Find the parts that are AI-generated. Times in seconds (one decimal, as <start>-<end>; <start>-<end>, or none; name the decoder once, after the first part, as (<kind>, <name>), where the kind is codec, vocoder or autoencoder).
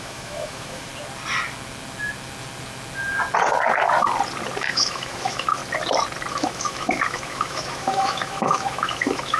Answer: 0.0-0.9 (autoencoder, DAC-VAE); 4.6-5.6; 6.3-9.4